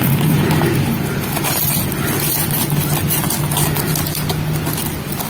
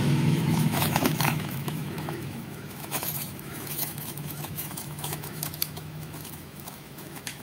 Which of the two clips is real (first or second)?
first